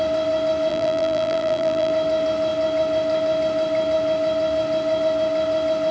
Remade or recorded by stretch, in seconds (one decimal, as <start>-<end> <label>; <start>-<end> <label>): 0.0-0.7 recorded; 0.7-1.9 remade; 1.9-5.9 recorded